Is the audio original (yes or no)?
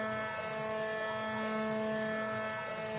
yes